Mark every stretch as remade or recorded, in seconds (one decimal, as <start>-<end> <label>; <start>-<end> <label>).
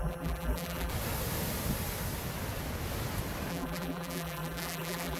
0.0-0.9 remade; 0.9-3.5 recorded; 3.5-5.2 remade